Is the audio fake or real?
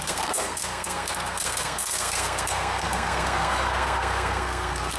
fake